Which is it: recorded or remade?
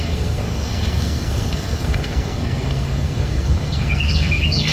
remade